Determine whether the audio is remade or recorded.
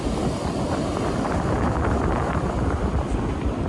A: recorded